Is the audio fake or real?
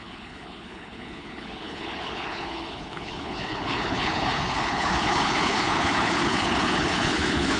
fake